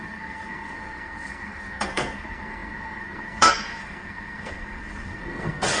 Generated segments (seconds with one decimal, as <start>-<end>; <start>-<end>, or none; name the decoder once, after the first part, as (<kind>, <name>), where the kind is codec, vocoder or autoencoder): 0.0-5.8 (codec, SNAC)